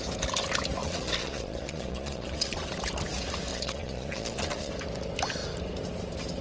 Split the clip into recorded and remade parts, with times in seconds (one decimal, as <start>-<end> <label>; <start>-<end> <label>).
0.0-0.8 recorded; 0.8-2.7 remade; 2.7-3.5 recorded; 3.5-4.7 remade; 4.7-6.4 recorded